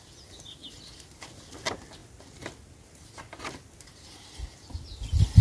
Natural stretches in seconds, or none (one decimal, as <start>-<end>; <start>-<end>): 0.0-5.4